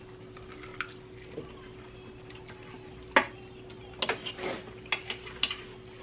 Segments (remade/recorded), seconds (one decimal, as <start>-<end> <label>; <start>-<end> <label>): 0.0-6.0 recorded